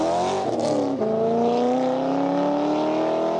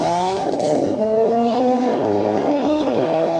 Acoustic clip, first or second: first